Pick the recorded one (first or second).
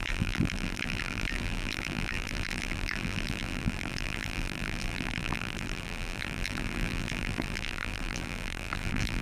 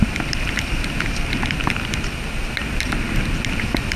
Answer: second